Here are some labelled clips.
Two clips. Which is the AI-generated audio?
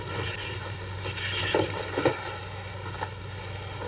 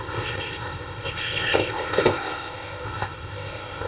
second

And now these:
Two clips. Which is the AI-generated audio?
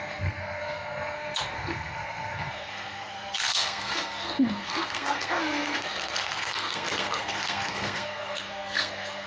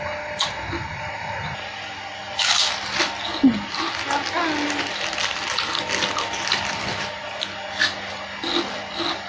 first